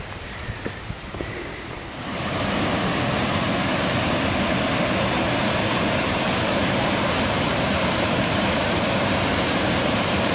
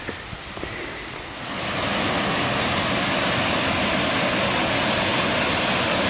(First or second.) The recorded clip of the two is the second